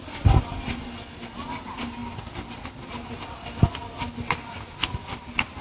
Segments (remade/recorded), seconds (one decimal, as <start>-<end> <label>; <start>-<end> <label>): 0.0-5.6 recorded